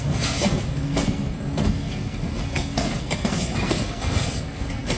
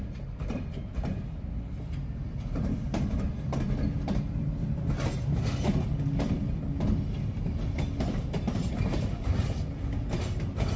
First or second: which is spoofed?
first